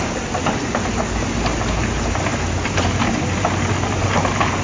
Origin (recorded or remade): recorded